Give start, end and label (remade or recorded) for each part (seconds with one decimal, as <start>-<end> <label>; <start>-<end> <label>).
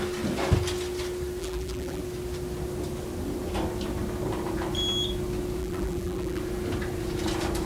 0.0-1.4 recorded; 1.4-2.0 remade; 2.0-5.6 recorded; 5.6-6.4 remade; 6.4-7.7 recorded